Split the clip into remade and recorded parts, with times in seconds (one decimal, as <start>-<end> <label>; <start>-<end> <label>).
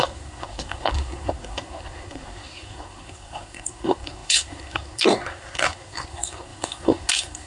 0.0-7.5 remade